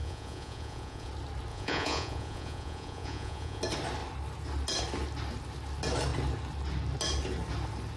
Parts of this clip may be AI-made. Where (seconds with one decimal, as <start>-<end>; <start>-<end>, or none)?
0.0-1.1; 1.5-3.6